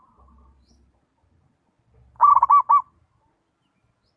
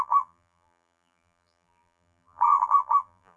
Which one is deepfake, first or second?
second